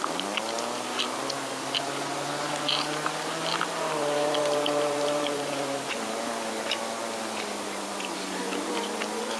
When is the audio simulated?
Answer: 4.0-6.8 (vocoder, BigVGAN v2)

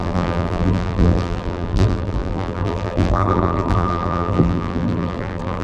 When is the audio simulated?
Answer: 0.0-5.6 (vocoder, BigVGAN v2)

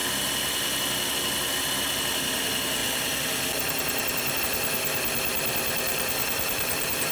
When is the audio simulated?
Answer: 5.9-7.1 (vocoder, BigVGAN v2)